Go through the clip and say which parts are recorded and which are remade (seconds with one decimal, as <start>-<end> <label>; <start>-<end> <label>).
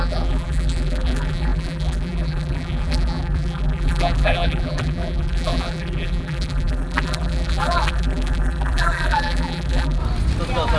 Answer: 0.0-10.0 remade; 10.0-10.8 recorded